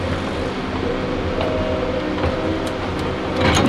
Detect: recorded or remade recorded